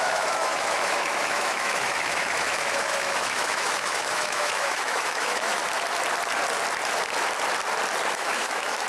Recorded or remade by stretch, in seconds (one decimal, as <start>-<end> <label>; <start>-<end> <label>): 0.0-5.6 remade; 5.6-8.1 recorded; 8.1-8.9 remade